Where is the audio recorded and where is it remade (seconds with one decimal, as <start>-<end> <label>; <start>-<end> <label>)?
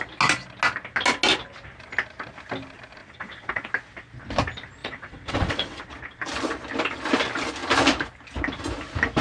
0.0-3.0 recorded; 3.0-3.7 remade; 3.7-4.8 recorded; 4.8-5.8 remade; 5.8-9.2 recorded